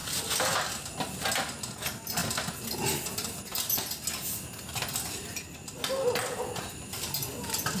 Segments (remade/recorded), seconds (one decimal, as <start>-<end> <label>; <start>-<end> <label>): 0.0-7.8 recorded